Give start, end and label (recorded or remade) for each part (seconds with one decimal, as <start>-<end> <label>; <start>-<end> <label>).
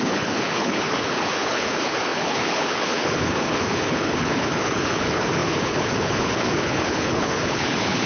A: 0.0-8.1 remade